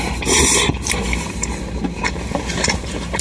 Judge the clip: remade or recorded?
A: remade